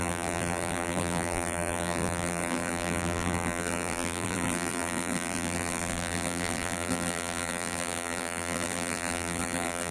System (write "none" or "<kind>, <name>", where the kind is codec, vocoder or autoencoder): vocoder, BigVGAN v2